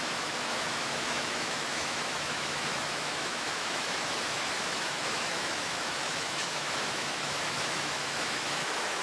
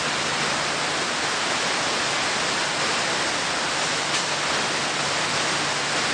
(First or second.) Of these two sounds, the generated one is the first